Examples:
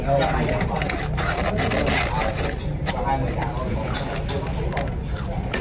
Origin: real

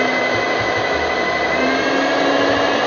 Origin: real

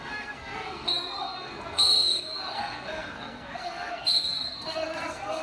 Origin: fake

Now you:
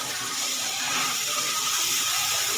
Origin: fake